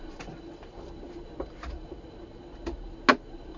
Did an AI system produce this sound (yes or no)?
no